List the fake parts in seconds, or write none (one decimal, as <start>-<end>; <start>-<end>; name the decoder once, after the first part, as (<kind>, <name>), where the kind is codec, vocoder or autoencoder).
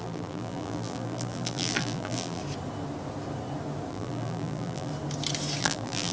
0.0-2.4 (vocoder, BigVGAN v2); 3.9-4.9; 5.6-6.1